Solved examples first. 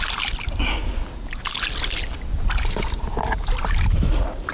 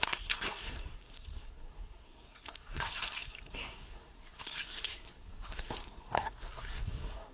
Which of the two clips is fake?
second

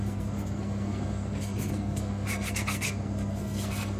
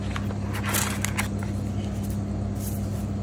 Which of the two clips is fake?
first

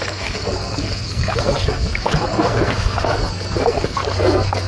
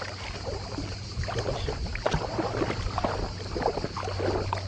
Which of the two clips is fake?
first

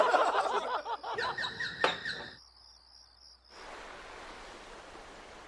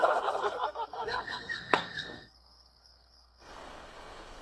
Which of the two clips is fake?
second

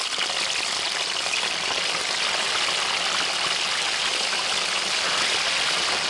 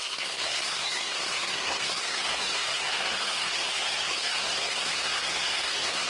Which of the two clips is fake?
second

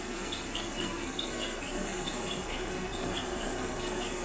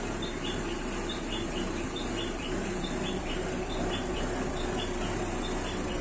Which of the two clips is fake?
first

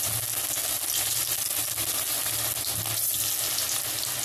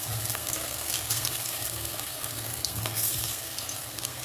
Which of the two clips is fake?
second